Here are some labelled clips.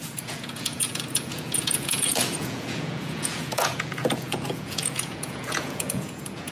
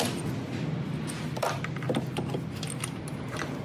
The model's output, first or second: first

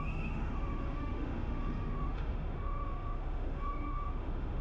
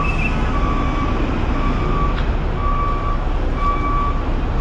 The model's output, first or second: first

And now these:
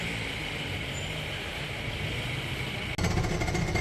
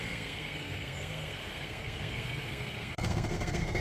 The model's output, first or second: second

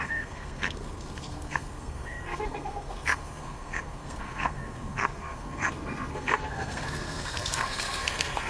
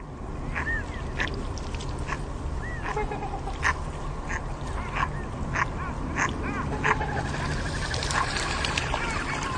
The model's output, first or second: first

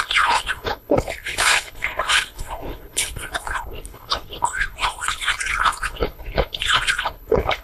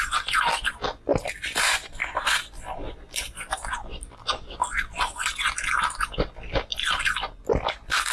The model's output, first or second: first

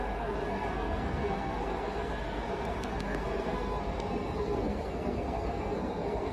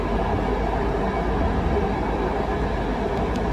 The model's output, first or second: first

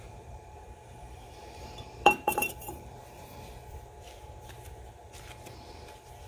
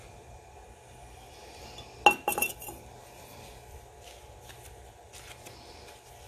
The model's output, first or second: first